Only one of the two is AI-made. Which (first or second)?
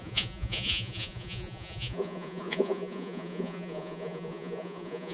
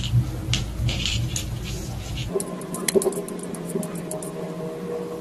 first